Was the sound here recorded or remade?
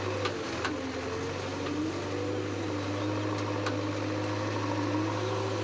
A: recorded